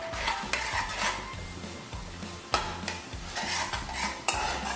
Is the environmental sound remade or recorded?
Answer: recorded